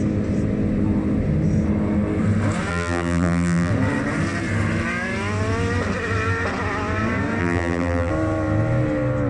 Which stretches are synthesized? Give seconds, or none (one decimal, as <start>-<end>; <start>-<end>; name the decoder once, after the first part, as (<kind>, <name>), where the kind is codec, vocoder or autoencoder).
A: 2.7-3.7 (vocoder, BigVGAN v2); 7.4-8.1